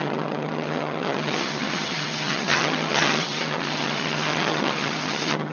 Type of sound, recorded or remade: remade